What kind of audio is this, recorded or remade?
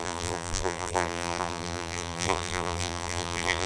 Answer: remade